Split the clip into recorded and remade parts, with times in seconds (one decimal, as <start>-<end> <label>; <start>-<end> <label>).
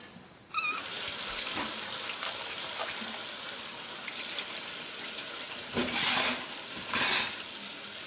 0.0-8.1 recorded